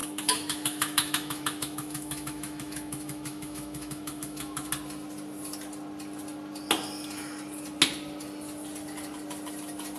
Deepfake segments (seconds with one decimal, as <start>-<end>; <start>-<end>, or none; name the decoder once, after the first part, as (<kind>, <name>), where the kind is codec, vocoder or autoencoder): 0.0-4.7 (autoencoder, DAC-VAE)

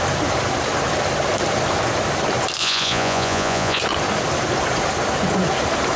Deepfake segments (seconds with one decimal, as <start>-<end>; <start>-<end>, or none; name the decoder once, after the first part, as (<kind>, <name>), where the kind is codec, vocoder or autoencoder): 2.6-3.8 (vocoder, Vocos)

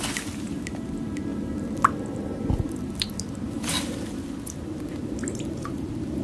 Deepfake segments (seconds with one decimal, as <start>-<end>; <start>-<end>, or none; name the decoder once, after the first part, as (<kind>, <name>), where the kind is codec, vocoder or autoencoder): none